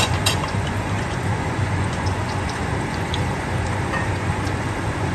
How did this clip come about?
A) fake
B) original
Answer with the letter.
A